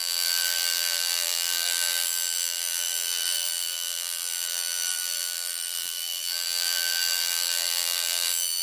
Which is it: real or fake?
fake